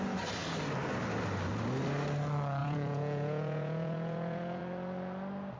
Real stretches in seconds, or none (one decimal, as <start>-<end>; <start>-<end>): 0.0-2.6; 4.6-5.6